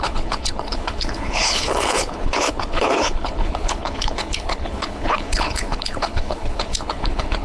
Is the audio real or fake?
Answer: fake